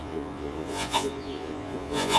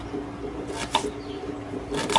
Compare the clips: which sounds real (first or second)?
second